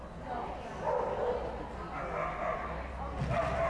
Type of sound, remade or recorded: recorded